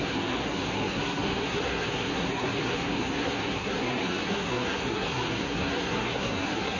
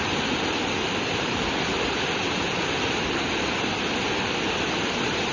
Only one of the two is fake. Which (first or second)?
first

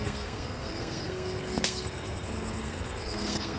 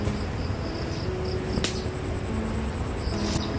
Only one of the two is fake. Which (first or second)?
first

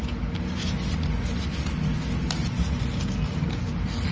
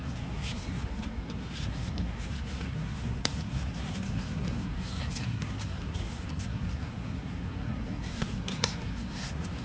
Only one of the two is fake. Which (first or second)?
second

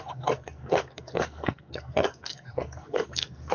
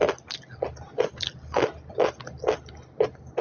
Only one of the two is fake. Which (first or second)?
first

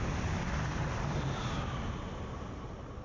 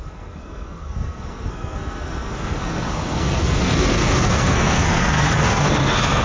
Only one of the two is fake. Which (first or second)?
second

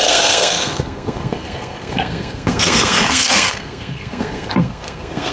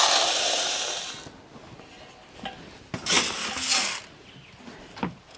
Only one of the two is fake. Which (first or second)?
first